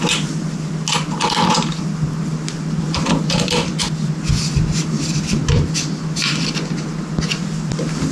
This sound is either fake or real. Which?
real